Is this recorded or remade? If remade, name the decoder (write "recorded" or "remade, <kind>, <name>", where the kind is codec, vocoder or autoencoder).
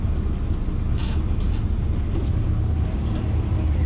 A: recorded